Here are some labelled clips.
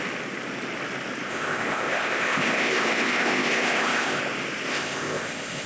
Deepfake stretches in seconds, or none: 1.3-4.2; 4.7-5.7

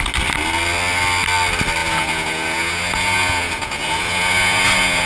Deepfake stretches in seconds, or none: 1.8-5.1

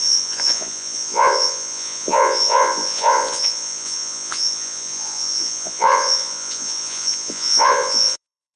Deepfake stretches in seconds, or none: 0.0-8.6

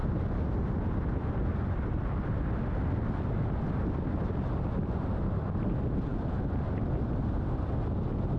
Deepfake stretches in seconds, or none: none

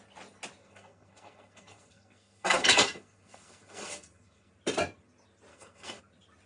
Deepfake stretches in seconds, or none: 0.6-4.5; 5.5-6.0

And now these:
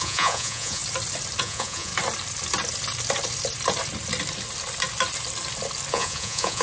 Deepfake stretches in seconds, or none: 0.0-0.8; 1.4-1.9; 5.9-6.6

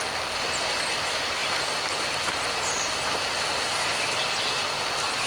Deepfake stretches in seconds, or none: none

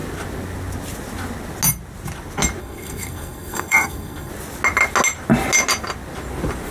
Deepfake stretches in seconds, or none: 2.6-4.3